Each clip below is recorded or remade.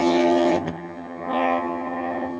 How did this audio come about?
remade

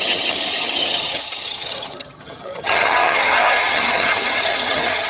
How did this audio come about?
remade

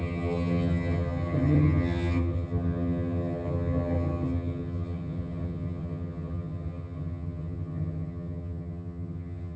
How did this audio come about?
remade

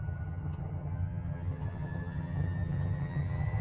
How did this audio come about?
remade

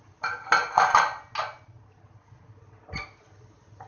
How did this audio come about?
recorded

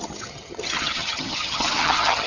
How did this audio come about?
remade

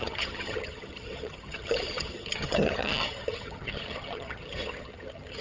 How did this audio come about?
remade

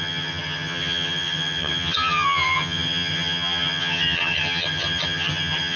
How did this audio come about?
remade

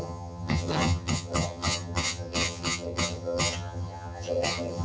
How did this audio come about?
remade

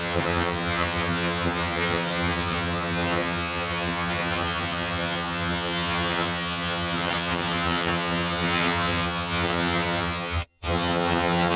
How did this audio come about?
remade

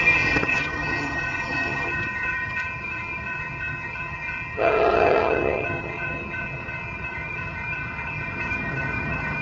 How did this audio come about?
remade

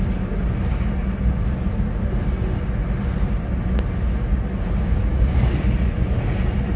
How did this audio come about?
recorded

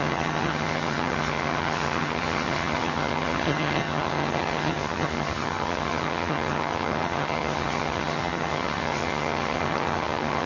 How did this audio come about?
remade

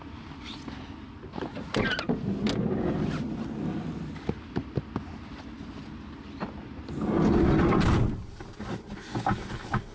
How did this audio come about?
recorded